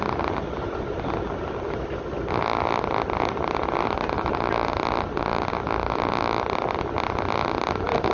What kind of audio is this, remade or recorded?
recorded